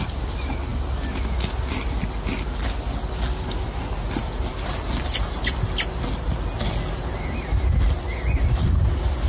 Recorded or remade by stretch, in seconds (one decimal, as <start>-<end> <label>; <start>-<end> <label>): 0.0-9.3 recorded